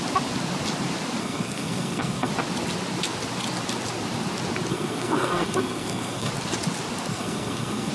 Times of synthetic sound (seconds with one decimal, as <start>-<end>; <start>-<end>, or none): 1.2-2.3; 4.7-6.3; 7.1-7.9